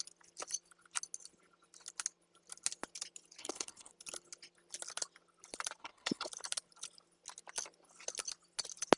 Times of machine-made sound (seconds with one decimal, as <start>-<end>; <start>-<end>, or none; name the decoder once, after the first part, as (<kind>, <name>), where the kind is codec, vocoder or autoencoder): 3.4-3.9 (codec, HILCodec); 5.8-6.3